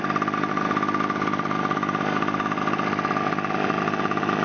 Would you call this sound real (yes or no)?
yes